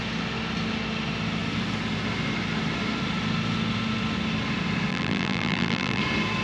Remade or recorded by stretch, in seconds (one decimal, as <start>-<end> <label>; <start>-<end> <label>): 0.0-4.9 recorded; 4.9-6.0 remade; 6.0-6.4 recorded